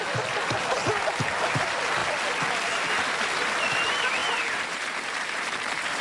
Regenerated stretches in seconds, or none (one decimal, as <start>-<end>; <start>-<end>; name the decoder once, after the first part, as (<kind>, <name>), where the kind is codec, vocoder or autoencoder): 4.2-6.0 (vocoder, BigVGAN v2)